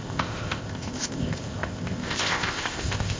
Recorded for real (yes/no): no